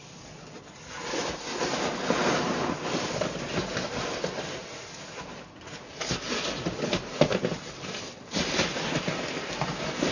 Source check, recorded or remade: recorded